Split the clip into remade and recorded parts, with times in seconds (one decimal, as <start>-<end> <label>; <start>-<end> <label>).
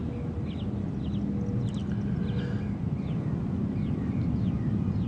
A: 0.0-5.1 recorded